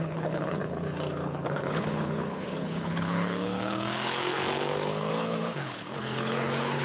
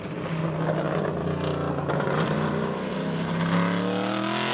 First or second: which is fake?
first